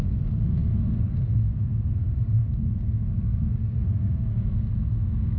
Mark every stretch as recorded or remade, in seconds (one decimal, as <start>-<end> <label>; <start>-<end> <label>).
0.0-5.4 remade